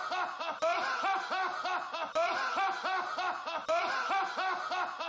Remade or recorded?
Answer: recorded